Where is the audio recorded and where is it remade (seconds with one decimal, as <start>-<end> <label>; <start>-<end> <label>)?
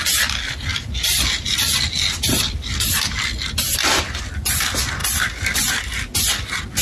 0.0-6.8 recorded